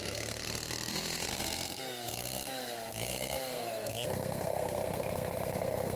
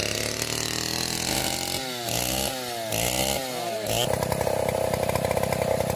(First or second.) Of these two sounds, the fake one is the first